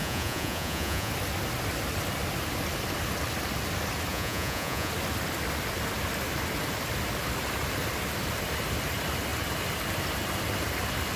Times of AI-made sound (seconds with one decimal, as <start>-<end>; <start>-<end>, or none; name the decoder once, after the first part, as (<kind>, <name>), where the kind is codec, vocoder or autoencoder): 0.0-1.1 (vocoder, Vocos); 4.1-4.9